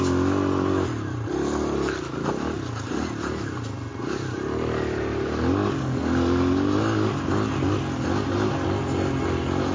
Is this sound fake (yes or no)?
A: no